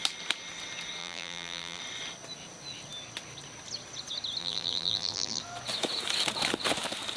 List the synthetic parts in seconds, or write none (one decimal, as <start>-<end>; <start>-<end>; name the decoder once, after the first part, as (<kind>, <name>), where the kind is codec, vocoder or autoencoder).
1.0-1.8 (vocoder, BigVGAN v2); 4.4-5.4